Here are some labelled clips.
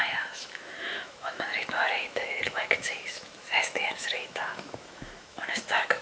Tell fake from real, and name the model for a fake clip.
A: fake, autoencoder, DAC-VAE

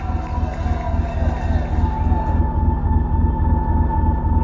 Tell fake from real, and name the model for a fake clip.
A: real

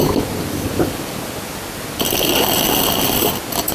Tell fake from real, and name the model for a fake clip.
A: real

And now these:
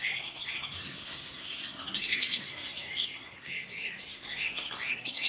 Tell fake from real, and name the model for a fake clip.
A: fake, codec, SNAC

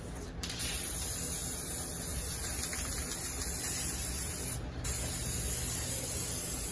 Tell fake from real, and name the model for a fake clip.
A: real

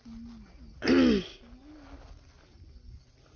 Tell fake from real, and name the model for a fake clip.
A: real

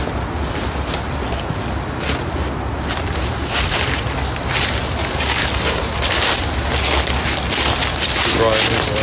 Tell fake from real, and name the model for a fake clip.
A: real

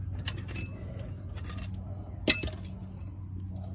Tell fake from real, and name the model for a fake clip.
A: real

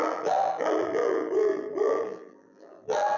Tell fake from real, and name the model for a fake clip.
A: fake, vocoder, BigVGAN v2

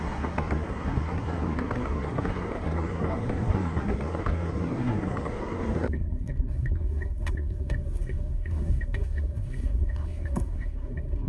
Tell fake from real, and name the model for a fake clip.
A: fake, codec, SNAC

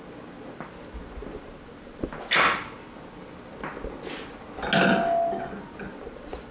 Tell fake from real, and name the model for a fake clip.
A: real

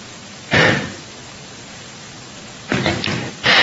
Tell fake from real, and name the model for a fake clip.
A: real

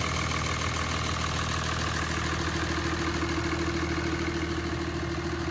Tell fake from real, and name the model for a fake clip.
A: real